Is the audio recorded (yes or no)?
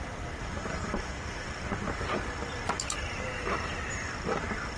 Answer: yes